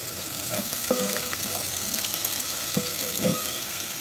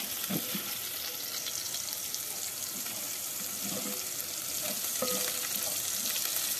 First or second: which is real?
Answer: second